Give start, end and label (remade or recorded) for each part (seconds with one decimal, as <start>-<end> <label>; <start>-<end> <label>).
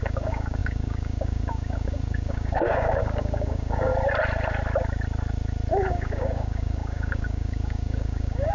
0.0-3.9 remade; 3.9-5.9 recorded; 5.9-8.5 remade